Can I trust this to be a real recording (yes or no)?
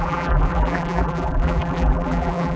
no